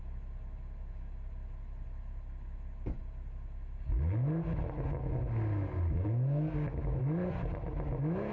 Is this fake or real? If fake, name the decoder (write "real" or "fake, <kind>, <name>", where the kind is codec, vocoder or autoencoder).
real